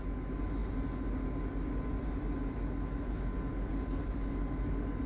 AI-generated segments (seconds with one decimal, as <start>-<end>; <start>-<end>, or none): none